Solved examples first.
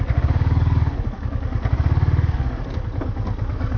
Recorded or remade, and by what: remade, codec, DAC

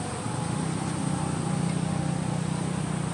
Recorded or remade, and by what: remade, vocoder, BigVGAN v2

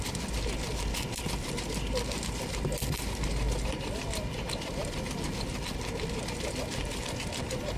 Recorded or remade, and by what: recorded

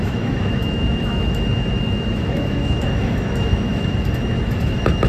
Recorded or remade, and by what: remade, autoencoder, DAC-VAE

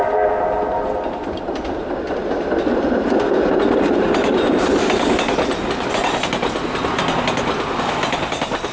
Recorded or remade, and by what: recorded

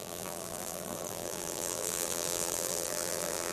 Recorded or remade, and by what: remade, vocoder, BigVGAN v2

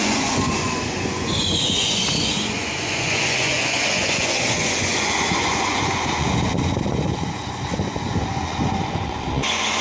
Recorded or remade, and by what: remade, vocoder, Vocos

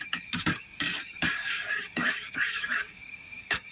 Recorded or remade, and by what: remade, codec, DAC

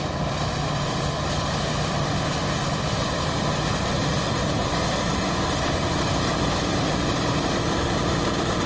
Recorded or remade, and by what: remade, vocoder, BigVGAN v2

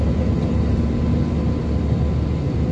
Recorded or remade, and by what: recorded